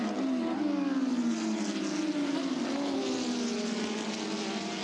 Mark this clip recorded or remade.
recorded